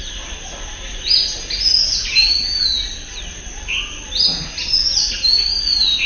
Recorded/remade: recorded